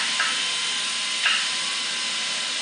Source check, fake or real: real